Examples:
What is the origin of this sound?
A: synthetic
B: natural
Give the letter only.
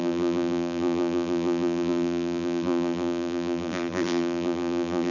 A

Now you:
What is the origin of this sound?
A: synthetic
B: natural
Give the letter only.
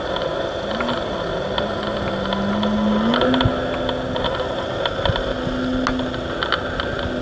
B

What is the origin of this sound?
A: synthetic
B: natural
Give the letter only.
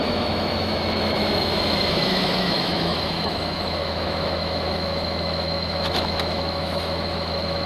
A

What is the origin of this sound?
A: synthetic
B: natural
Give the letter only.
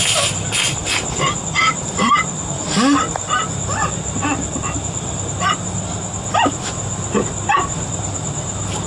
B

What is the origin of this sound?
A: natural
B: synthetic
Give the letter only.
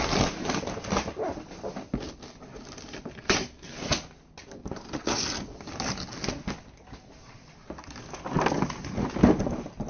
A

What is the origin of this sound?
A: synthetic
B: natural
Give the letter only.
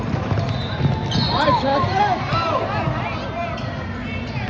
B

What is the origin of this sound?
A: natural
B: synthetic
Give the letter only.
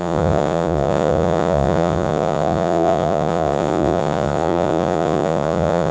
B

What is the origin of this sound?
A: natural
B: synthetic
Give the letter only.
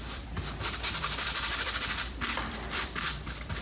B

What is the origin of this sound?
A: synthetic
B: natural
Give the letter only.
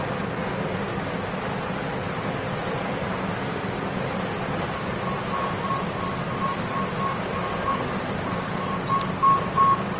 B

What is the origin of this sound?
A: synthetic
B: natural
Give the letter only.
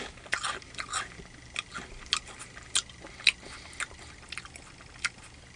B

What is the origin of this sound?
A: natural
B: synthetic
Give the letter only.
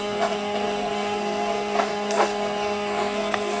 B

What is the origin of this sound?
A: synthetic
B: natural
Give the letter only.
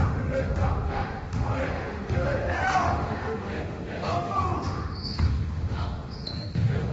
A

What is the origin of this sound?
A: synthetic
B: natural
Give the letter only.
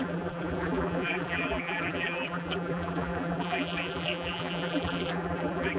A